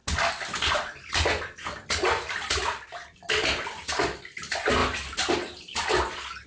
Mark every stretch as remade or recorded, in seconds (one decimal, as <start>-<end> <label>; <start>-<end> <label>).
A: 0.0-6.5 recorded